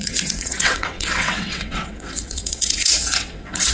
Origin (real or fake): fake